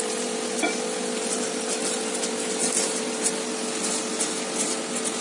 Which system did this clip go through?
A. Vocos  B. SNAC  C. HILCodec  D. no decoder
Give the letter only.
D